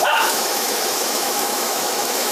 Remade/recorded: remade